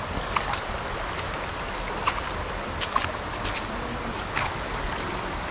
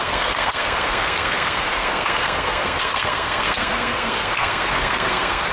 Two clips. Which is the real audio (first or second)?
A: first